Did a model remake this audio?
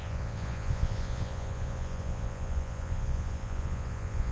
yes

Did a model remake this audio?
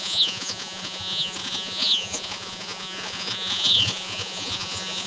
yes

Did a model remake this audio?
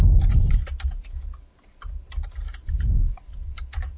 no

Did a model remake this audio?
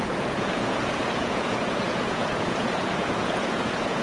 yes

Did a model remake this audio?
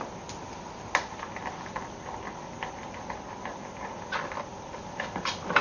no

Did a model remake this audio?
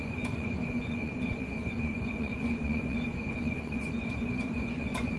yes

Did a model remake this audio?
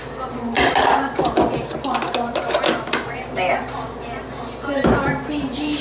no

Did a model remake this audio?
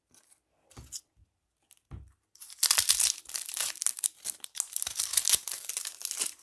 no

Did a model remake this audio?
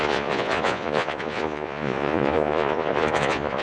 yes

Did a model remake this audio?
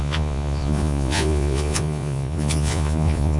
yes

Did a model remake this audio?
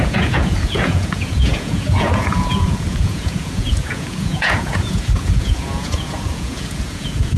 yes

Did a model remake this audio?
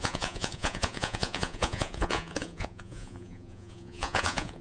yes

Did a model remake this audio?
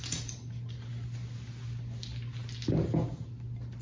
no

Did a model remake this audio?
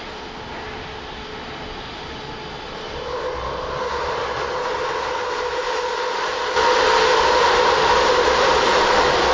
no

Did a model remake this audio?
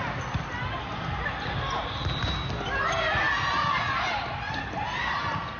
no